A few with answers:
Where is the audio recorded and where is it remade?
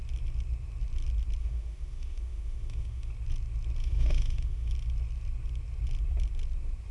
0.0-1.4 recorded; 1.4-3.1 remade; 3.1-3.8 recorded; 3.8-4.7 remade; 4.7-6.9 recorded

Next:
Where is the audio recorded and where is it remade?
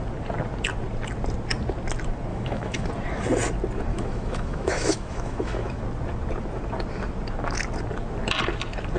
0.0-2.3 recorded; 2.3-2.9 remade; 2.9-3.9 recorded; 3.9-5.8 remade; 5.8-9.0 recorded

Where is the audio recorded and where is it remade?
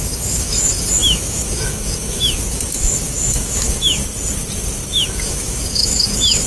0.0-4.0 remade; 4.0-4.7 recorded; 4.7-6.5 remade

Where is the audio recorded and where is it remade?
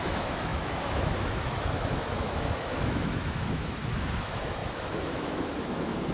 0.0-6.1 remade